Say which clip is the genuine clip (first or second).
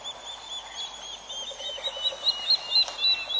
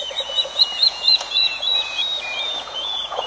first